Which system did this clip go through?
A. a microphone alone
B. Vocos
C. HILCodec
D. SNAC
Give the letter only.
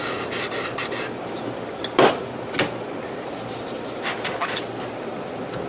A